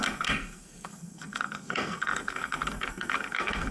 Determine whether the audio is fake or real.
fake